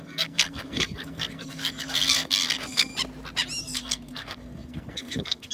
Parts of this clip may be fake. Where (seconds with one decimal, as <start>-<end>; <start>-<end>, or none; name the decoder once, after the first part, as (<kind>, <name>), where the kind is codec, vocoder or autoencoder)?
0.0-2.9 (codec, SNAC); 3.6-5.5